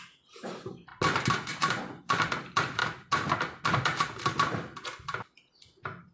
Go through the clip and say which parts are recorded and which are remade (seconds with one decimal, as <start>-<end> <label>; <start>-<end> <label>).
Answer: 0.0-0.9 remade; 0.9-1.5 recorded; 1.5-2.8 remade; 2.8-4.0 recorded; 4.0-6.1 remade